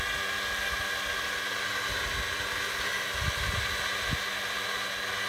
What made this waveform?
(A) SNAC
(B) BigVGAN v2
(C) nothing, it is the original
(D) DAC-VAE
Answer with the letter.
C